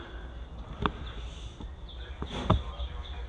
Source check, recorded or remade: recorded